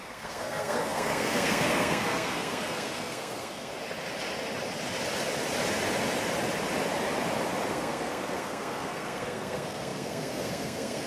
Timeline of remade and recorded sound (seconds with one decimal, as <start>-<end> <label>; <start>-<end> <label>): 0.0-3.7 remade; 3.7-7.7 recorded; 7.7-11.1 remade

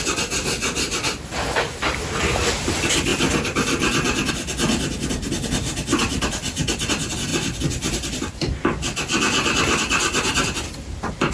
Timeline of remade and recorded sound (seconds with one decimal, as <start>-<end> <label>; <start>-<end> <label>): 0.0-3.1 recorded; 3.1-4.3 remade; 4.3-7.3 recorded; 7.3-10.7 remade; 10.7-11.3 recorded

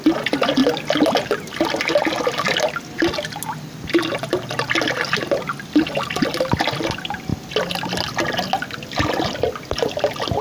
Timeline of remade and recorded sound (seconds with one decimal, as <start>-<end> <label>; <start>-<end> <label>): 0.0-10.4 recorded

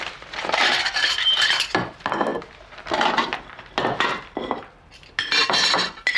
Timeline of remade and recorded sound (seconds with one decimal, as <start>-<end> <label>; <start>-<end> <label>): 0.0-6.2 recorded

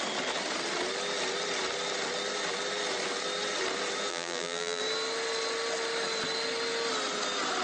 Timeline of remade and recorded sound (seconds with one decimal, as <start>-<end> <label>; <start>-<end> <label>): 0.0-4.1 recorded; 4.1-4.8 remade; 4.8-7.6 recorded

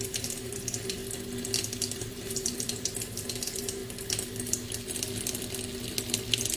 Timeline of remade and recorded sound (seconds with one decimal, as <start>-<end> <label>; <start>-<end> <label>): 0.0-1.0 remade; 1.0-2.0 recorded; 2.0-3.8 remade; 3.8-6.6 recorded

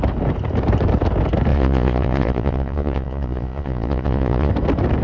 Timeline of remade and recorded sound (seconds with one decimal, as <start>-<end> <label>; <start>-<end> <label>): 0.0-1.5 recorded; 1.5-4.5 remade; 4.5-5.0 recorded